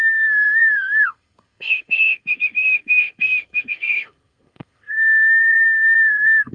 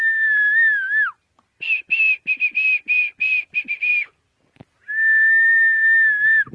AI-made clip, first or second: first